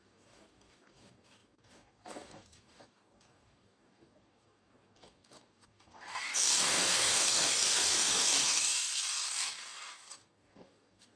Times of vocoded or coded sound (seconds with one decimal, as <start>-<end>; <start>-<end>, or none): 0.0-11.2